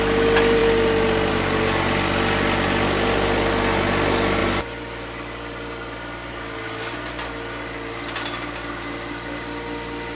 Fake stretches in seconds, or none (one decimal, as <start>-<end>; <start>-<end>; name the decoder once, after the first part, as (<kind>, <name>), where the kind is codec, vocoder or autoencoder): none